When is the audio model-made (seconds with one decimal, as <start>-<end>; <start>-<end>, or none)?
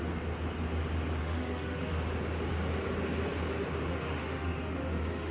1.2-1.9; 3.9-5.3